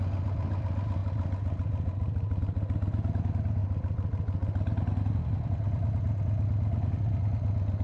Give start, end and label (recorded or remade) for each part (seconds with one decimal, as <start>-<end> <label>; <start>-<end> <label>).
0.0-7.8 recorded